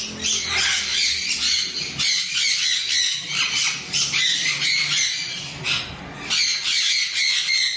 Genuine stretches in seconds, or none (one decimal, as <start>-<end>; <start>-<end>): 0.0-7.8